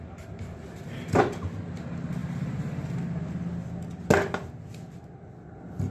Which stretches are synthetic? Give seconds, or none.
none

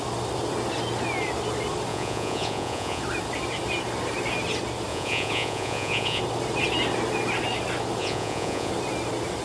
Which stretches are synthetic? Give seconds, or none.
1.9-3.0 (vocoder, Vocos); 4.9-6.2; 8.0-8.7

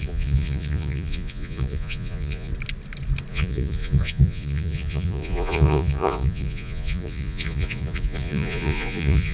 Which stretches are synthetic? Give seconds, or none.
0.0-2.5 (vocoder, Vocos); 3.3-9.3

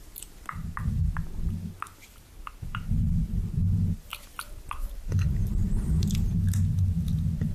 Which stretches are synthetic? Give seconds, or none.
none

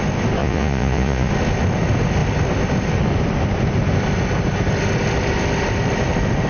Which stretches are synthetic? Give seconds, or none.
0.4-1.3 (vocoder, Vocos)

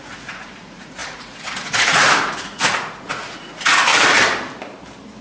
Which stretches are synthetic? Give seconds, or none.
0.0-3.9 (vocoder, Vocos)

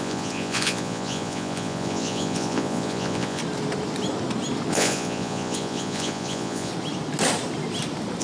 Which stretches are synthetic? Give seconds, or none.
0.0-3.4 (vocoder, Vocos); 4.7-6.7